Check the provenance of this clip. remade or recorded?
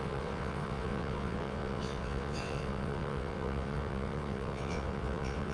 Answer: remade